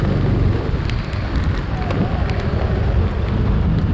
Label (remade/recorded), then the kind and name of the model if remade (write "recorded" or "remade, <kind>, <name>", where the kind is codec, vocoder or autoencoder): recorded